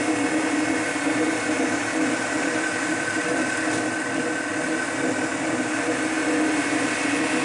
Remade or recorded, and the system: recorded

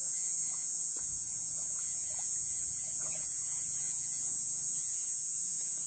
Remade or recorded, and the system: remade, vocoder, Vocos